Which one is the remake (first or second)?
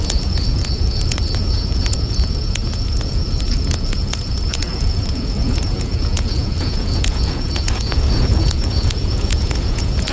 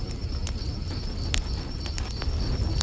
first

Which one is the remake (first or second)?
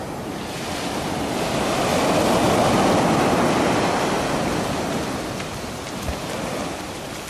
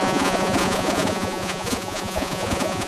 second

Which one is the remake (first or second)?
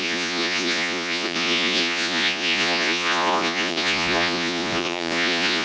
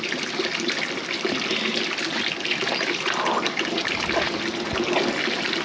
first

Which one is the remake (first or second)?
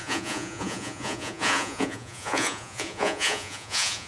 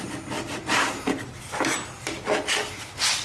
first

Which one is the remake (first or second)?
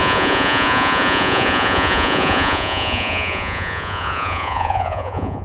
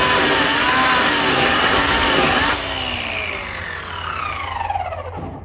first